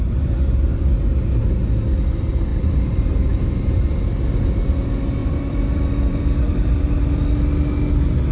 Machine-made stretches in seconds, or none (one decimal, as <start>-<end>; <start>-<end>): 2.5-4.0; 5.2-7.3